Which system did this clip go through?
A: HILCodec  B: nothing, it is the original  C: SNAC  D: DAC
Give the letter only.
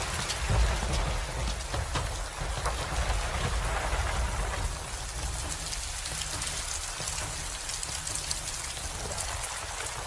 B